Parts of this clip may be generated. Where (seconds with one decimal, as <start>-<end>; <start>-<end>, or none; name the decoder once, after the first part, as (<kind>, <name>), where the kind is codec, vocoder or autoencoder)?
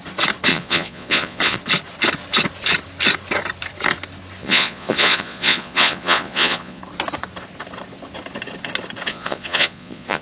0.5-1.6 (vocoder, Vocos); 4.4-6.8; 9.1-10.2